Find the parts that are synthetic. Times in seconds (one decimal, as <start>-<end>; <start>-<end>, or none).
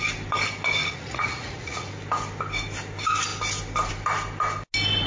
0.8-1.9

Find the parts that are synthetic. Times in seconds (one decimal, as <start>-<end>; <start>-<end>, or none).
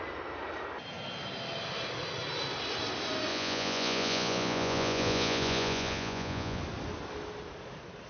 3.3-6.6